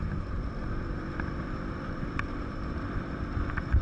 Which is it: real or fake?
fake